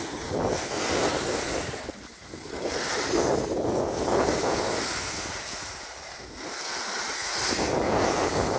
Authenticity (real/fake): real